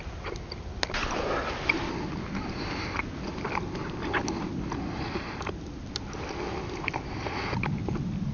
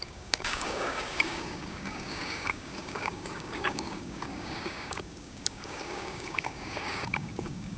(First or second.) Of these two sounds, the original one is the first